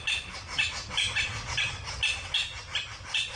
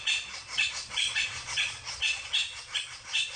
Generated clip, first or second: second